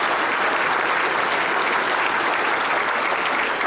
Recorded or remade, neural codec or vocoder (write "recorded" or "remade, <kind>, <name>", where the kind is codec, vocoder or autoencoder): recorded